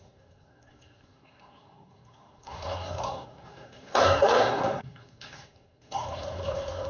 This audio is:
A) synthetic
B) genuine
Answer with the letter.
A